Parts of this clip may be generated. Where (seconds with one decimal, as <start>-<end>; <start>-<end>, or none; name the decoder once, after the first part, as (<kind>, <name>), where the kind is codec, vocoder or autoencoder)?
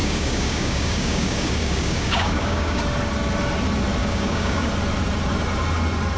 0.0-2.8 (codec, DAC); 4.0-4.7